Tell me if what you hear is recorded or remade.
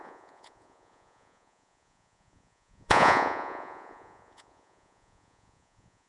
remade